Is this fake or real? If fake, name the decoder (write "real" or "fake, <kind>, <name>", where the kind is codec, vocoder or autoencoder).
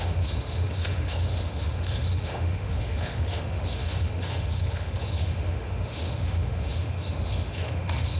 fake, autoencoder, DAC-VAE